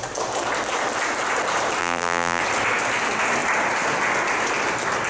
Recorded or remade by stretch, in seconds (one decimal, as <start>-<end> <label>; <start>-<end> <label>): 0.0-1.8 recorded; 1.8-2.4 remade; 2.4-5.1 recorded